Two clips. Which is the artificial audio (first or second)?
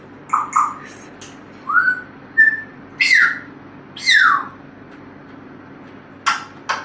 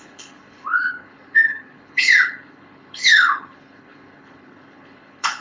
second